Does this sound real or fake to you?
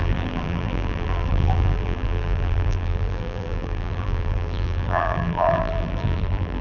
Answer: fake